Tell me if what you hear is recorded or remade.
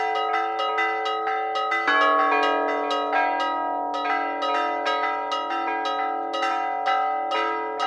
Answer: recorded